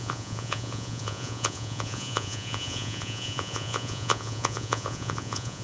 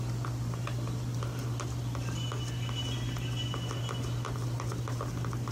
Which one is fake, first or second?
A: first